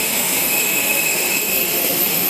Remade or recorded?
remade